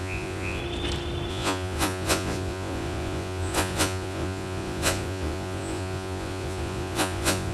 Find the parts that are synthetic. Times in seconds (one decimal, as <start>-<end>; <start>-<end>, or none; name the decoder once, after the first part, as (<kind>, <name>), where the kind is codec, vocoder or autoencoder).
0.0-0.6 (vocoder, Vocos); 1.3-7.5

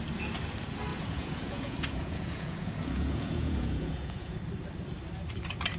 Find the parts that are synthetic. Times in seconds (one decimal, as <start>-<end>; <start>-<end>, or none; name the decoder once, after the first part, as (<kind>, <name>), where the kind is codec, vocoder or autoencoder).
0.9-4.4 (vocoder, Vocos)

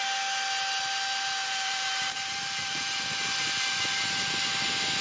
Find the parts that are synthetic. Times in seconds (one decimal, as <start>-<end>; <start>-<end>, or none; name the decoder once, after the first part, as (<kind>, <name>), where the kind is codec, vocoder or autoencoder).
1.4-2.8 (vocoder, BigVGAN v2)

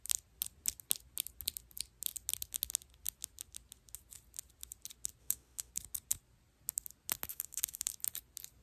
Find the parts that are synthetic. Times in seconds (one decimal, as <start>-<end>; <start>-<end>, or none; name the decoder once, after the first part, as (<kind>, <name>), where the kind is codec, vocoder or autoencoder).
5.2-5.7 (autoencoder, DAC-VAE); 7.3-7.9

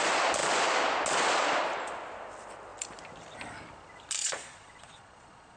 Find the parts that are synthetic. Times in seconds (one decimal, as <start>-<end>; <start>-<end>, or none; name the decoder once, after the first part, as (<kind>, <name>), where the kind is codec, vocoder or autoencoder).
4.2-5.6 (vocoder, Vocos)

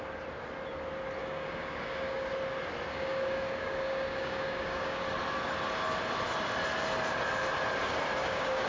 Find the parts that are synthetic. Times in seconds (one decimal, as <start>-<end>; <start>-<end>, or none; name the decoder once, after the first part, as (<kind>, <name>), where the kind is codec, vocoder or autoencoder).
1.2-2.3 (codec, DAC); 2.9-5.0; 8.2-8.7

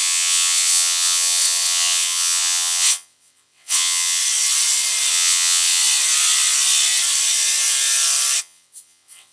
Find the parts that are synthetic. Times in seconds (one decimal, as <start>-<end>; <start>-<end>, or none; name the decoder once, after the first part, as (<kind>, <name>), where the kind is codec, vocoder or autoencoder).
0.0-4.2 (vocoder, WaveNeXt); 5.1-5.8; 8.4-9.3